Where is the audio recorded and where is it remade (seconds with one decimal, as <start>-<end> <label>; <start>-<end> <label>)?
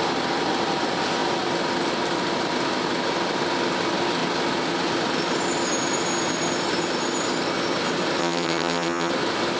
0.0-8.2 recorded; 8.2-9.1 remade; 9.1-9.6 recorded